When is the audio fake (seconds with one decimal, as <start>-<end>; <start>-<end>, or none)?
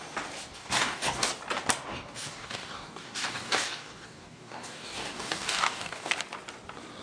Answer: 0.5-1.3; 1.9-6.1